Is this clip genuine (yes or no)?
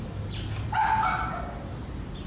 yes